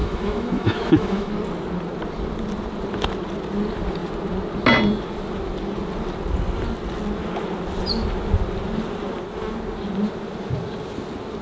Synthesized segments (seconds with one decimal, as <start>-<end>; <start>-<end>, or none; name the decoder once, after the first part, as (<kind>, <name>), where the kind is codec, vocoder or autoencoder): 0.0-1.3 (autoencoder, DAC-VAE)